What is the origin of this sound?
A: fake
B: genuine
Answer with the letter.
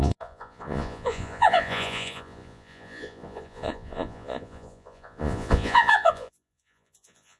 A